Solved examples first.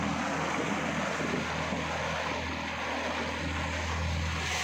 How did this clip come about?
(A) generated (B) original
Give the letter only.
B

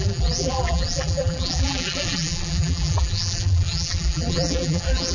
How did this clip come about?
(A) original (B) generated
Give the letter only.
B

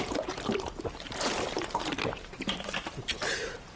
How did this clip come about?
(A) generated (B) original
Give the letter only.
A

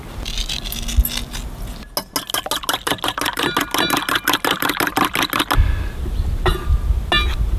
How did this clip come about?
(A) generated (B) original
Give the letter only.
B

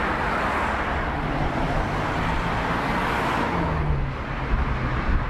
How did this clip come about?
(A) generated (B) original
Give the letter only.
B